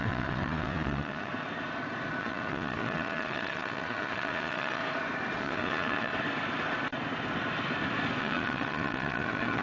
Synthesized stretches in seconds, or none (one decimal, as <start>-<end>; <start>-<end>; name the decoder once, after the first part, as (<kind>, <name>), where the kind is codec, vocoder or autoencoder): 0.0-1.3 (vocoder, Vocos); 2.2-4.8; 5.4-6.1; 8.2-9.6